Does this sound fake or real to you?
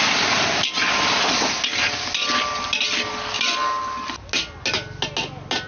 real